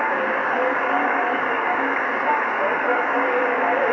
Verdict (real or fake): fake